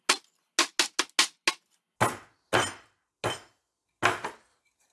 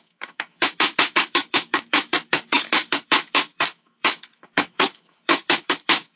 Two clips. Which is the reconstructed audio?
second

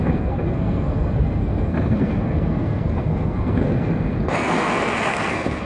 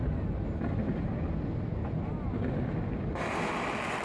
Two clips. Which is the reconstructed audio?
first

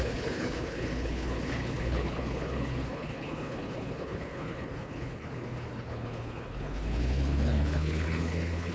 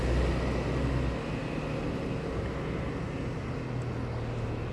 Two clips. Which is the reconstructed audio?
first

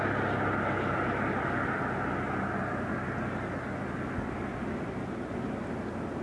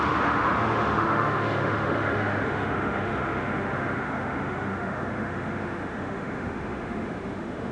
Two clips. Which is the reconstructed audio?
second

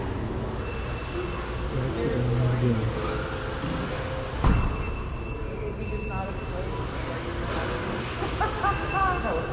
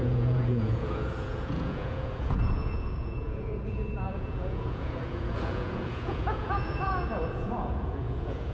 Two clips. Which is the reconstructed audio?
second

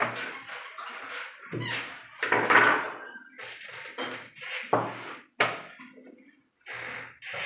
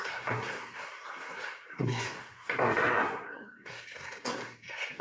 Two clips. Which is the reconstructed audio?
second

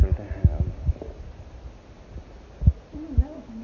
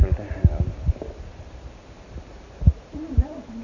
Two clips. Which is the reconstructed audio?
second